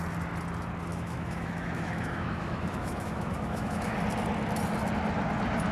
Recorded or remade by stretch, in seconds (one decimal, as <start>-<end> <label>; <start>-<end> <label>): 0.0-0.9 recorded; 0.9-4.0 remade; 4.0-5.7 recorded